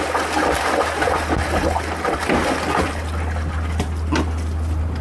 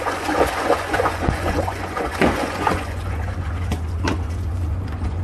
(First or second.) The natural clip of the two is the first